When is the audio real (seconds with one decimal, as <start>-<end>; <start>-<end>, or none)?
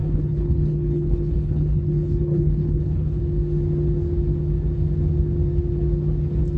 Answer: 3.2-6.6